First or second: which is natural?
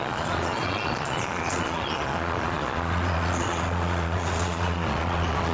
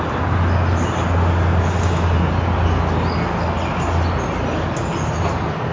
second